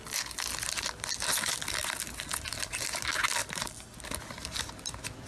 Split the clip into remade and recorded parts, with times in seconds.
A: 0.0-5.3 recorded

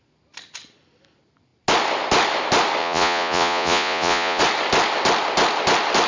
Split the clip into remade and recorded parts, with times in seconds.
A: 0.0-2.8 recorded; 2.8-4.4 remade; 4.4-6.1 recorded

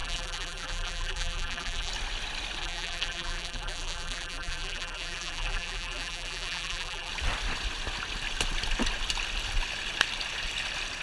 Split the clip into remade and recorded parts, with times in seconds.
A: 0.0-1.9 remade; 1.9-2.6 recorded; 2.6-7.1 remade; 7.1-11.0 recorded